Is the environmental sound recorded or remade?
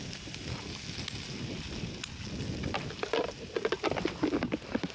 recorded